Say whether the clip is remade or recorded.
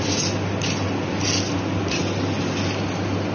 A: recorded